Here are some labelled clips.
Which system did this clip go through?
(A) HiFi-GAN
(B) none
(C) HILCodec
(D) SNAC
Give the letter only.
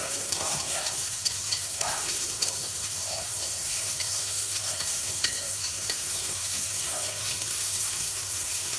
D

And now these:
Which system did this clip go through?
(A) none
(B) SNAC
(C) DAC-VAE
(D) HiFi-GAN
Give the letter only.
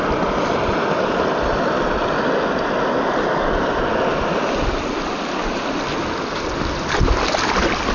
A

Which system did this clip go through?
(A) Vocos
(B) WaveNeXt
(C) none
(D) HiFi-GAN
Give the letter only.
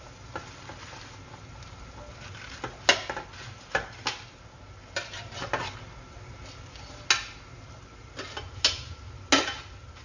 C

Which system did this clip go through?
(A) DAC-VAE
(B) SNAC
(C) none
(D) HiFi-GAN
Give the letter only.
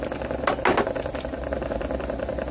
C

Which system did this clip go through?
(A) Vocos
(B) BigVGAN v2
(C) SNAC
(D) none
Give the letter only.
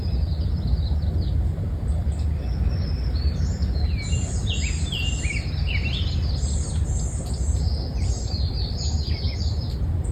D